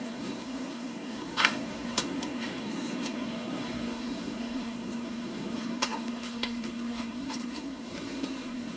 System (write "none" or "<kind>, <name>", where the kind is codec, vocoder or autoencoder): codec, SNAC